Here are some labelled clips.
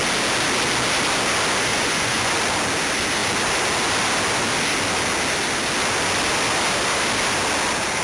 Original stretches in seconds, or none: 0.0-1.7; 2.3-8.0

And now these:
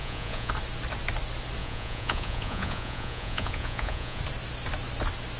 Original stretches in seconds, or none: 0.5-1.6; 4.2-5.4

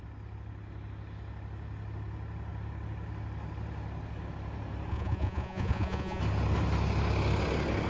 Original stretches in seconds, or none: 0.0-4.9; 6.2-7.9